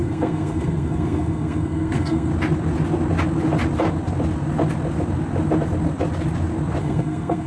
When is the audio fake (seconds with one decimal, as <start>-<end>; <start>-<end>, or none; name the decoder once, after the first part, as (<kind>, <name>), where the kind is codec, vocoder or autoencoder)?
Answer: 0.0-2.3 (codec, SNAC); 6.8-7.5